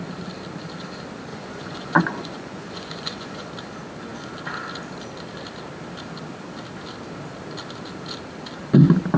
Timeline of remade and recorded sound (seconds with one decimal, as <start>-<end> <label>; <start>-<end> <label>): 0.0-1.3 recorded; 1.3-3.5 remade; 3.5-9.2 recorded

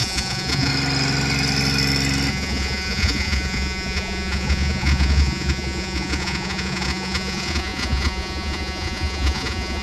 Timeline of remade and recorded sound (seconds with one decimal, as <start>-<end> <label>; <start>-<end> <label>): 0.0-0.7 remade; 0.7-2.3 recorded; 2.3-9.8 remade

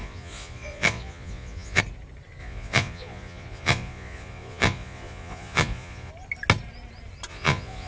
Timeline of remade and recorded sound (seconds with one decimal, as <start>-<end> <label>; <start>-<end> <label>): 0.0-1.8 remade; 1.8-2.4 recorded; 2.4-6.1 remade; 6.1-7.3 recorded; 7.3-7.9 remade